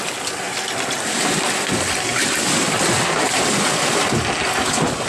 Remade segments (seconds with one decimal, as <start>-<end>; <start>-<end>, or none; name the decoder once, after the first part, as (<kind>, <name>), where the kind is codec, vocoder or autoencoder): none